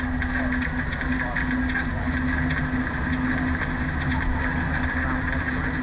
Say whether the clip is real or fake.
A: real